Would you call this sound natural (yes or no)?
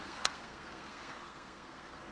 no